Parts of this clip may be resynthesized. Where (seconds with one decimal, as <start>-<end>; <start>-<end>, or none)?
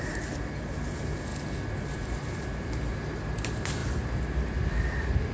0.0-1.3; 1.9-5.3